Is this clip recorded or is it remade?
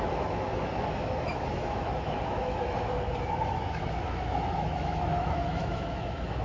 remade